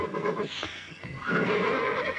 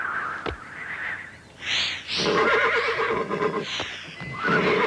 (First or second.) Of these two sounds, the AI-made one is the first